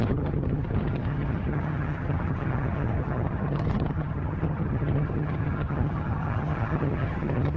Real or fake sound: fake